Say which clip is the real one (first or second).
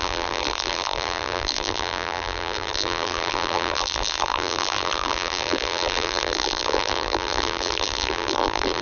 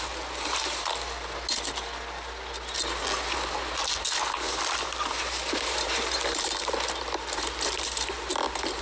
second